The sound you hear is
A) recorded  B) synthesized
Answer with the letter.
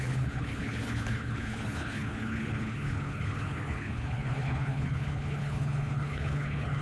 B